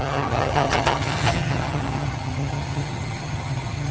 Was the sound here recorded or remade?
remade